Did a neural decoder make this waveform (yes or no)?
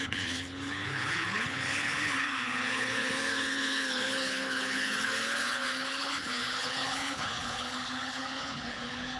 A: yes